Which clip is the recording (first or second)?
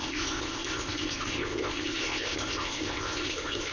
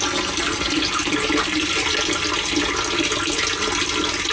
second